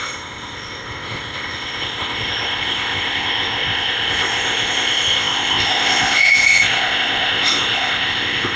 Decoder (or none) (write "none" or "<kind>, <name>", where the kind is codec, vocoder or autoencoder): codec, ZipCodec